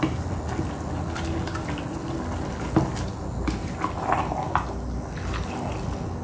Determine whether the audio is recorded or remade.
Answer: recorded